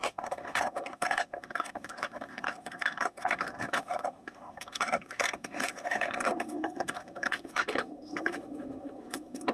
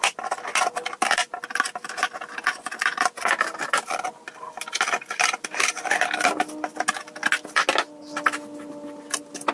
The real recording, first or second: second